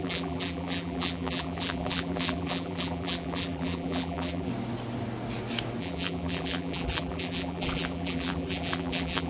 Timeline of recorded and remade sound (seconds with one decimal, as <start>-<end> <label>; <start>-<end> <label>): 0.0-4.5 remade; 4.5-5.8 recorded; 5.8-9.3 remade